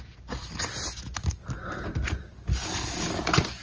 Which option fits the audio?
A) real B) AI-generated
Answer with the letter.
A